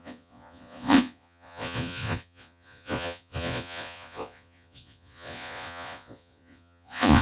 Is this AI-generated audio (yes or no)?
yes